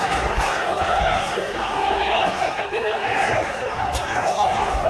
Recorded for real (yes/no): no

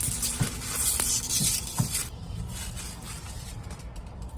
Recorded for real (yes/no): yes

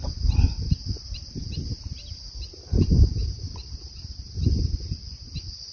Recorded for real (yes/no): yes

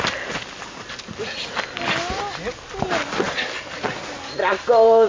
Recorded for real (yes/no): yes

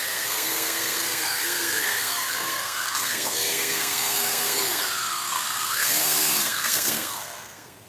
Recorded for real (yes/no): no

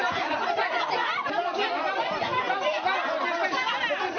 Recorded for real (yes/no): yes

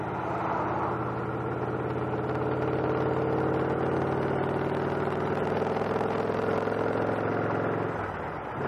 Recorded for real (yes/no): yes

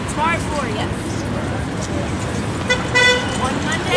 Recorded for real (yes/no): yes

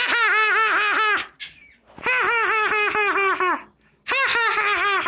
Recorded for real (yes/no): yes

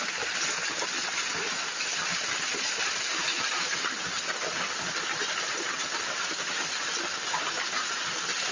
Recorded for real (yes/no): yes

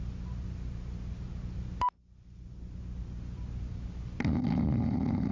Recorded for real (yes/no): yes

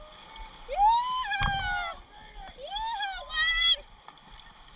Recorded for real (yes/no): yes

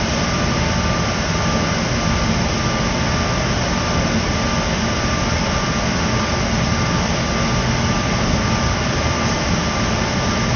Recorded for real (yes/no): yes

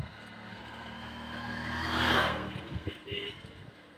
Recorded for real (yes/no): no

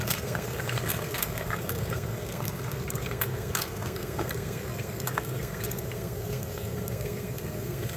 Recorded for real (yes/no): no